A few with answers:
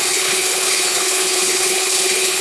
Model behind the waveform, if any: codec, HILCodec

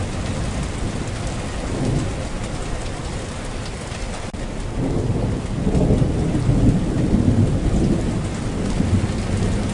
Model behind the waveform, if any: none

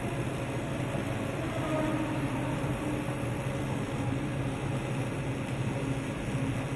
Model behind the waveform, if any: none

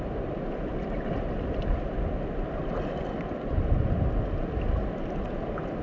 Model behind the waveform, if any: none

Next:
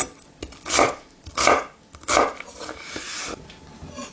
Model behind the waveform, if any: none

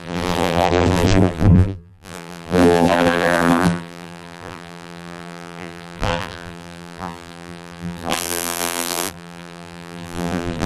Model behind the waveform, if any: vocoder, BigVGAN v2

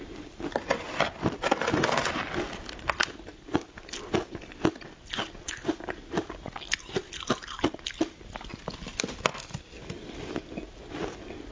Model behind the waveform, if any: none